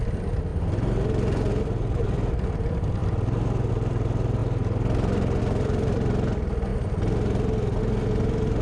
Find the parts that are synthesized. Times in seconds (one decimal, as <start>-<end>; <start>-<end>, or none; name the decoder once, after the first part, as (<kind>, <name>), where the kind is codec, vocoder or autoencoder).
0.0-0.5 (vocoder, BigVGAN v2); 1.5-3.0; 3.7-4.4; 5.4-6.7; 7.8-8.6